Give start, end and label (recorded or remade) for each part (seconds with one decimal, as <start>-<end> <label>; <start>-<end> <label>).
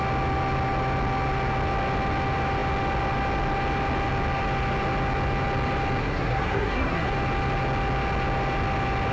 0.0-6.0 recorded; 6.0-7.1 remade; 7.1-9.1 recorded